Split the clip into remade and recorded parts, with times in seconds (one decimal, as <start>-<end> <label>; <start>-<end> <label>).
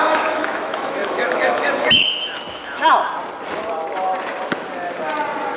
0.0-3.0 remade; 3.0-5.6 recorded